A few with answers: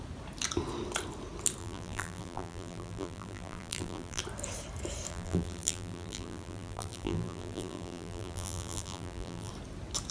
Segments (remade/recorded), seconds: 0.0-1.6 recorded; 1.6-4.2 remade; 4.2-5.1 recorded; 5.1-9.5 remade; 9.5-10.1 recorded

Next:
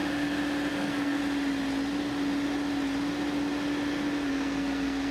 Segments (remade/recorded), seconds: 0.0-0.7 recorded; 0.7-1.2 remade; 1.2-4.3 recorded; 4.3-5.1 remade

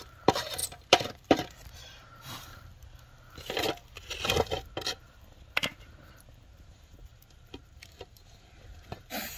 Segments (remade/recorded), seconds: 0.0-2.7 remade; 2.7-5.6 recorded; 5.6-7.1 remade; 7.1-7.6 recorded; 7.6-9.4 remade

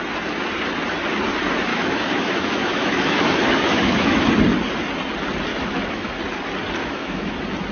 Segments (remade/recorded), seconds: 0.0-1.7 recorded; 1.7-4.2 remade; 4.2-5.5 recorded; 5.5-6.1 remade; 6.1-6.8 recorded; 6.8-7.3 remade; 7.3-7.7 recorded

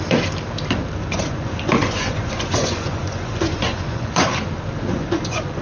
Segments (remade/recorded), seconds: 0.0-1.0 recorded; 1.0-4.4 remade; 4.4-4.9 recorded; 4.9-5.6 remade